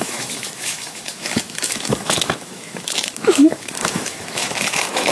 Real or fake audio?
fake